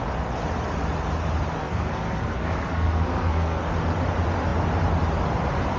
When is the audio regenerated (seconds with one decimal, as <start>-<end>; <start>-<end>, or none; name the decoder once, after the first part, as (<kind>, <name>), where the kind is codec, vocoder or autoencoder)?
1.6-3.6 (codec, SNAC)